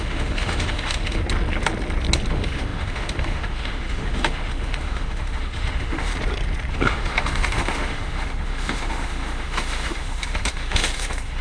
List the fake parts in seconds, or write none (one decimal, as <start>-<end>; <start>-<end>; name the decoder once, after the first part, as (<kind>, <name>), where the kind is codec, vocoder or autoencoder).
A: 0.0-1.2 (autoencoder, DAC-VAE); 2.3-6.1; 6.7-11.4